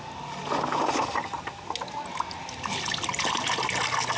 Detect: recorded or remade recorded